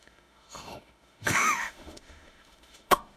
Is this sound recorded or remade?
remade